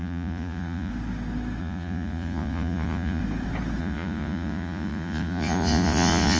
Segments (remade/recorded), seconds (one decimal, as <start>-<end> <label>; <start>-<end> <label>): 0.0-0.9 remade; 0.9-1.6 recorded; 1.6-3.2 remade; 3.2-3.8 recorded; 3.8-6.4 remade